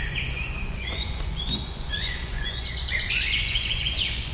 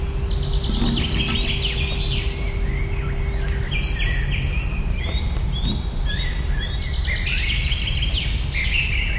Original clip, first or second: second